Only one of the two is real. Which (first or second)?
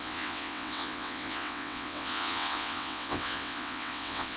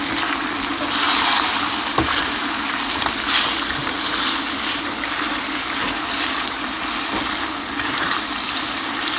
second